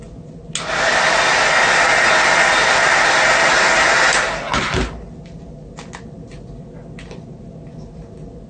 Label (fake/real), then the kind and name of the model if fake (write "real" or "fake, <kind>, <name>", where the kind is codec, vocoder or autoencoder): real